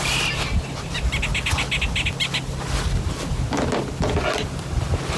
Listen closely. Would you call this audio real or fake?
real